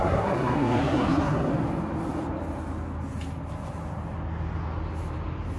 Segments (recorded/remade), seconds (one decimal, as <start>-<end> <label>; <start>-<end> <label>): 0.0-1.5 remade; 1.5-5.6 recorded